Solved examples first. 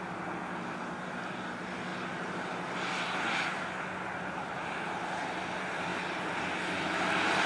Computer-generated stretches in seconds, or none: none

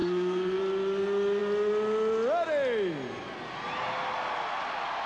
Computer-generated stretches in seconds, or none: 0.0-0.6 (codec, SNAC)

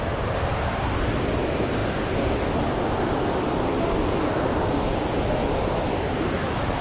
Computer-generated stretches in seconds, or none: none

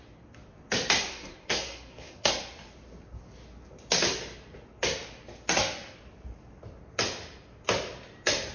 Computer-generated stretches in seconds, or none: 1.1-2.3 (codec, SNAC)

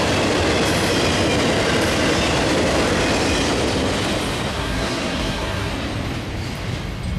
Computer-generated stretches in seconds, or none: 4.5-5.7 (codec, SNAC)

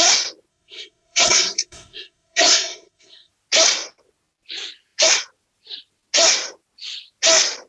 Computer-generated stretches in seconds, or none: 0.5-3.3 (codec, SNAC)

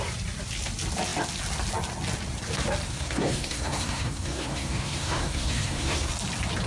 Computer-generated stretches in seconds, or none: 2.9-6.1 (codec, SNAC)

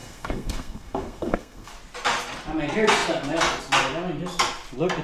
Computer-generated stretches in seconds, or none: 0.0-1.7 (codec, SNAC)